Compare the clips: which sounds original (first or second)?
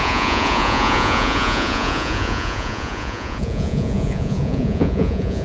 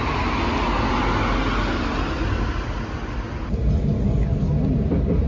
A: second